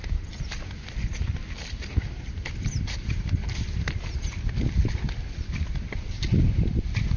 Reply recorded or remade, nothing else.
recorded